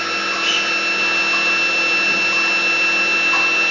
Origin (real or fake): real